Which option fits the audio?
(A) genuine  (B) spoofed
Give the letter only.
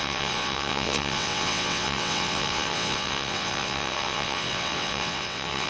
B